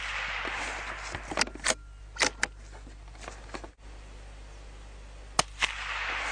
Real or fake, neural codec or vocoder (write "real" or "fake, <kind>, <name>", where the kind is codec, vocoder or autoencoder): real